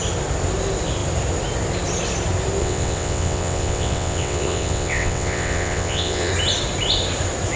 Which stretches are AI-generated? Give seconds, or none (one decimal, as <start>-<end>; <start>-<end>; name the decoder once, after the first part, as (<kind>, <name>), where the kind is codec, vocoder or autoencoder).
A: 2.6-6.3 (vocoder, WaveNeXt)